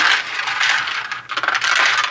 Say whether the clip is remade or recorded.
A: recorded